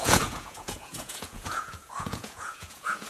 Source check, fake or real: fake